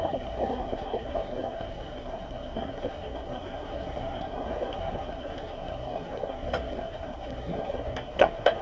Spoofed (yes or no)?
yes